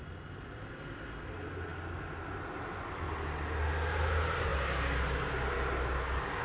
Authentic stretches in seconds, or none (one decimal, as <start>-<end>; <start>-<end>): 0.0-6.4